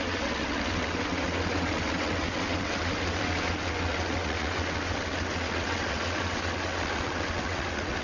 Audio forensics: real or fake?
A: fake